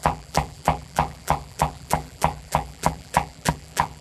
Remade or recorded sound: remade